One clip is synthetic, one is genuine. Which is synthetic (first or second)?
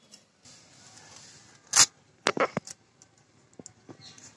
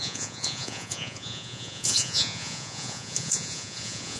second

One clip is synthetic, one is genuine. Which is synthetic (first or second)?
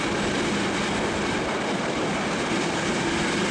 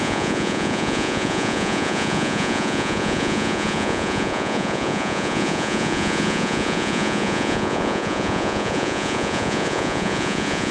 second